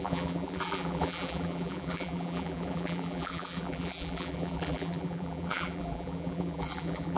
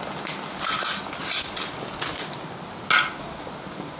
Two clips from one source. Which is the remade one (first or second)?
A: first